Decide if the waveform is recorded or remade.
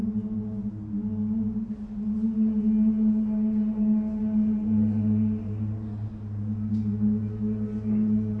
recorded